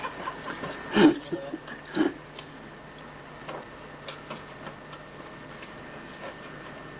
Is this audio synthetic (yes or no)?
no